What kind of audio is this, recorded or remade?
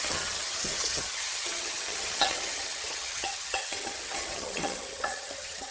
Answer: remade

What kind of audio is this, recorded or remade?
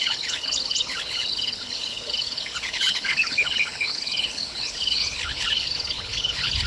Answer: remade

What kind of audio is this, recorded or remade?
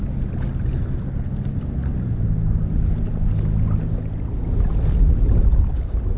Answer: recorded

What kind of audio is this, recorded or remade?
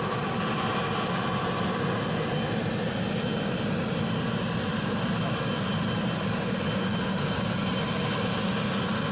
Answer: recorded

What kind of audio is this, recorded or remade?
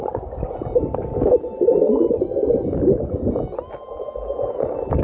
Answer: recorded